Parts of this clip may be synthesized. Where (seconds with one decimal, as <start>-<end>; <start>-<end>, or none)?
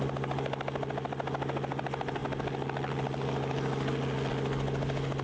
none